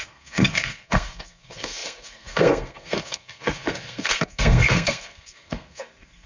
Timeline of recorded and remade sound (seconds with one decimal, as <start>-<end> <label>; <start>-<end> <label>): 0.0-6.3 remade